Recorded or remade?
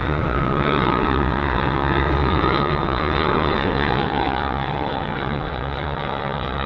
remade